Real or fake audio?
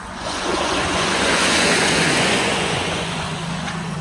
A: fake